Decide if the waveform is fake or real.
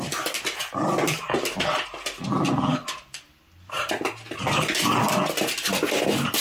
real